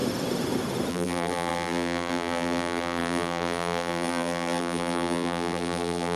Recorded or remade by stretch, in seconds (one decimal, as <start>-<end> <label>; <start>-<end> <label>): 0.0-0.9 recorded; 0.9-6.2 remade